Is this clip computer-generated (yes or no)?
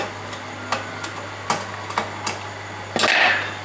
no